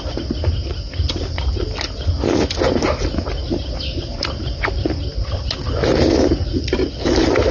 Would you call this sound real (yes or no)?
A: yes